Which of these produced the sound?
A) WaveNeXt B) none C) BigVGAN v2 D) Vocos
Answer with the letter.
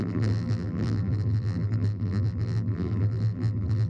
C